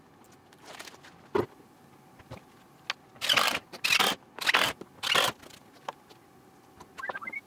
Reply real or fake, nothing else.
real